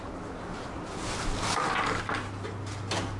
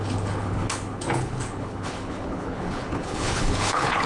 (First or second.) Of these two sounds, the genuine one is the first